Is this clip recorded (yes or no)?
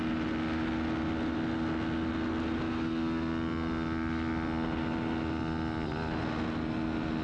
yes